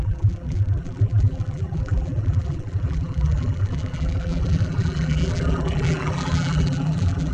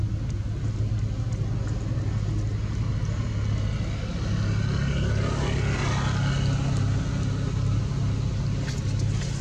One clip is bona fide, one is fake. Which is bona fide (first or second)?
second